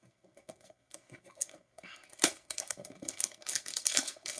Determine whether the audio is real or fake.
fake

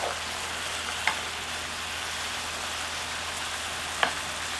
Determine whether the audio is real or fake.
real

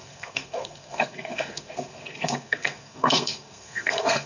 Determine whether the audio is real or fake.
fake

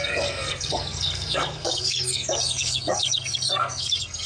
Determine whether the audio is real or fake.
fake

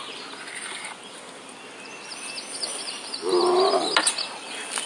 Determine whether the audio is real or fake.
real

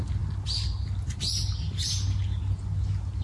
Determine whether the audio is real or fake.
real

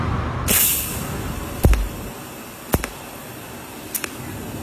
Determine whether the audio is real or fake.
real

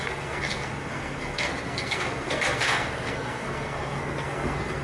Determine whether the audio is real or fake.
fake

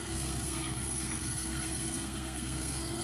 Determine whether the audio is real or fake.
fake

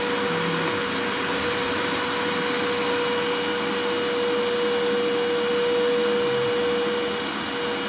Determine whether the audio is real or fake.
real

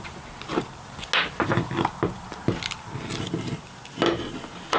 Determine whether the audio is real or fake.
real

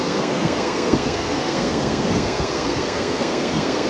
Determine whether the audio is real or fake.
fake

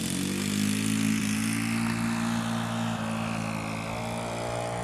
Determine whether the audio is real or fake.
real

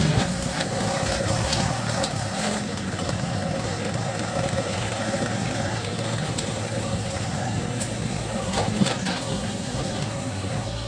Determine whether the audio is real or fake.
fake